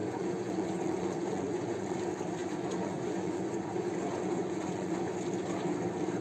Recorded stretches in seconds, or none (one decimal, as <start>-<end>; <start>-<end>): 2.0-2.4; 5.1-6.2